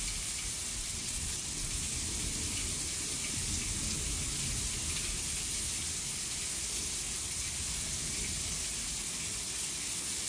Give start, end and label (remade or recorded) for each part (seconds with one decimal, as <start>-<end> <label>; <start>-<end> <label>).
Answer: 0.0-0.8 recorded; 0.8-1.7 remade; 1.7-10.3 recorded

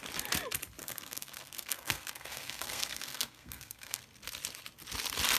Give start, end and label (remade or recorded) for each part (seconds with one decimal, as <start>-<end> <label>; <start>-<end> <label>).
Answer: 0.0-0.8 recorded; 0.8-4.0 remade; 4.0-5.4 recorded

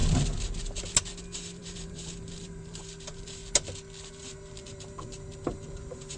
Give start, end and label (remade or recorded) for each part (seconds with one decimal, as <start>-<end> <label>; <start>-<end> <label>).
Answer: 0.0-1.2 recorded; 1.2-3.4 remade; 3.4-4.1 recorded; 4.1-6.2 remade

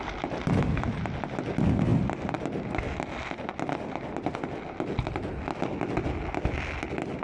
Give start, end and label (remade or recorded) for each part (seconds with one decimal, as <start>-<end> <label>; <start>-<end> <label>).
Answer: 0.0-7.2 recorded